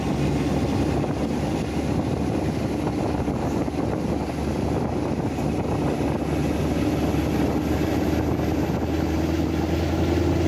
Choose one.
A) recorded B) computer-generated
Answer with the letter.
A